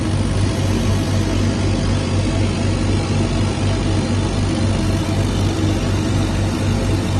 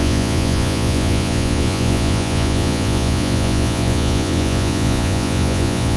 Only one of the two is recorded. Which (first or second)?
first